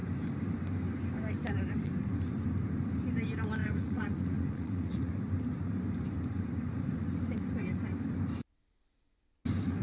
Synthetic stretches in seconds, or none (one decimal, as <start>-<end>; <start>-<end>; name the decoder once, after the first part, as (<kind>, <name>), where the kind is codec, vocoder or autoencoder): 3.6-5.1 (vocoder, Vocos)